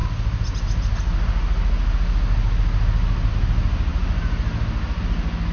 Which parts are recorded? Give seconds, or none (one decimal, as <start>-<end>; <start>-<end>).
0.0-5.5